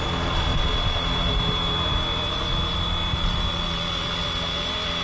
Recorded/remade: recorded